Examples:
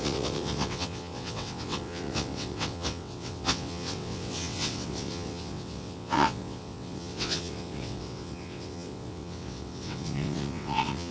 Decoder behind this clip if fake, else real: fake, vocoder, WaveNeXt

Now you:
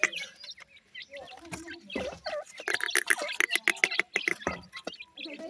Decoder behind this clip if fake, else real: real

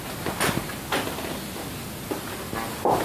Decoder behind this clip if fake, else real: real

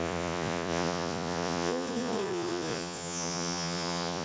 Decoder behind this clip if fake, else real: fake, vocoder, Vocos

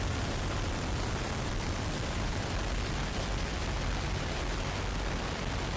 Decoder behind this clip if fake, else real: fake, vocoder, BigVGAN v2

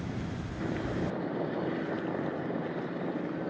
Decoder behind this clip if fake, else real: real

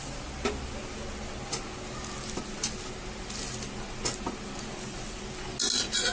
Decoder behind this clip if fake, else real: real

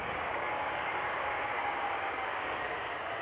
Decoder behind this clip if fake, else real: fake, codec, DAC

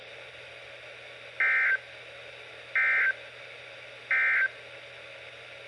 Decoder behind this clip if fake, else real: real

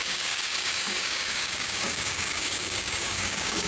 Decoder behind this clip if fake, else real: fake, codec, DAC